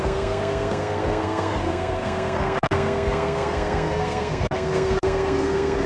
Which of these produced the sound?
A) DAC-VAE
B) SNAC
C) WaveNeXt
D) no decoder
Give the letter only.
B